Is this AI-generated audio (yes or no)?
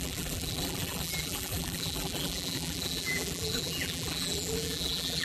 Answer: yes